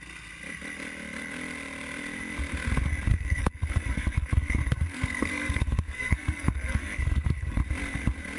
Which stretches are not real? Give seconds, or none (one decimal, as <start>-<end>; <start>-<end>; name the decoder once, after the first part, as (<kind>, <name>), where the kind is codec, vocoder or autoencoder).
3.1-7.6 (codec, SNAC)